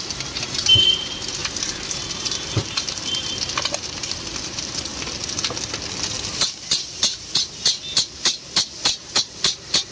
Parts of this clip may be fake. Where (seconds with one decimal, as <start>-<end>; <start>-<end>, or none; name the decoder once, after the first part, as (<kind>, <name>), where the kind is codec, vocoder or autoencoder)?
0.0-4.9 (vocoder, BigVGAN v2); 8.7-9.9